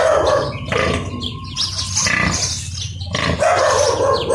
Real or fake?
real